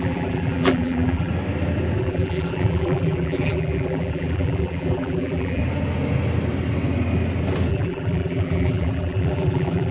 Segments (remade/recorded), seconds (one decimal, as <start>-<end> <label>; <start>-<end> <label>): 0.0-1.3 remade; 1.3-2.0 recorded; 2.0-5.6 remade; 5.6-7.7 recorded; 7.7-9.9 remade